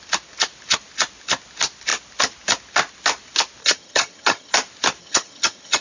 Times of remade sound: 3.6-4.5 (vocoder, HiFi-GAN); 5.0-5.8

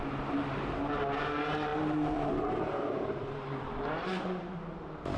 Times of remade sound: 0.0-5.2 (vocoder, BigVGAN v2)

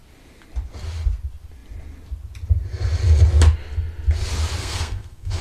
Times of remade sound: 4.6-5.4 (codec, SNAC)

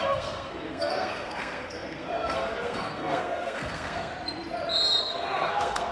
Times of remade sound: 0.0-4.1 (codec, SNAC); 5.0-5.9

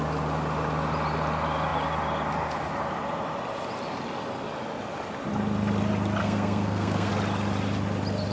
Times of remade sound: 6.2-7.1 (codec, SNAC)

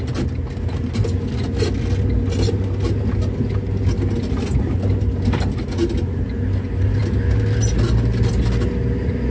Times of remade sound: none